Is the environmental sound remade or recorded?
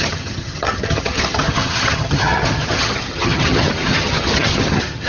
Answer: remade